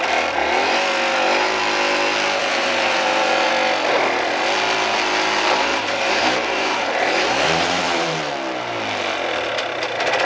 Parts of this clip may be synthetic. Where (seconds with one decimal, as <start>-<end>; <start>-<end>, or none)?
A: 2.4-3.5; 5.7-8.3